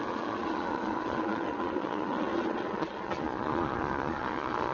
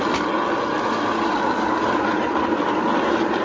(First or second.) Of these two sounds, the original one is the second